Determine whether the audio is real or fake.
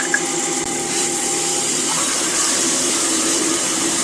fake